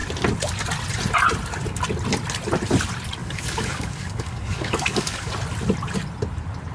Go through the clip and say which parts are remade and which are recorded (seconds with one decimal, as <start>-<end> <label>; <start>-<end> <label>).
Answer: 0.0-3.2 recorded; 3.2-5.3 remade; 5.3-6.7 recorded